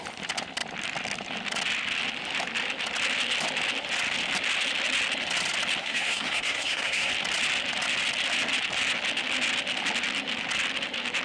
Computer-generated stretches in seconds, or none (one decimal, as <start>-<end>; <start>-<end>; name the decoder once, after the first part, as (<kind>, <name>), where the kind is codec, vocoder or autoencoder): 5.8-7.1 (codec, SNAC)